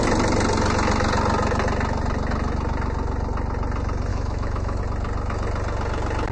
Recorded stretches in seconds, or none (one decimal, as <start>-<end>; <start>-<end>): 0.0-4.1; 4.8-6.3